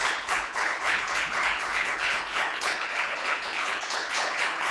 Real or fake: fake